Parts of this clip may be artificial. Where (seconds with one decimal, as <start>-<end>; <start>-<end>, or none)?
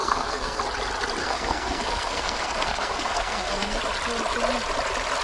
0.0-0.6; 1.2-3.8